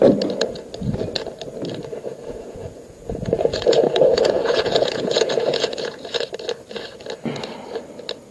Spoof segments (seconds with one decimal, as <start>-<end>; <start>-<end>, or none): 2.1-6.2